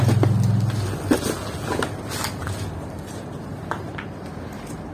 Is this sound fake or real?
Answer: real